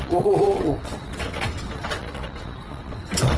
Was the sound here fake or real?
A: fake